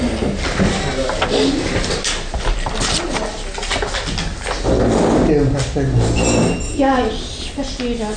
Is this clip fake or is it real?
real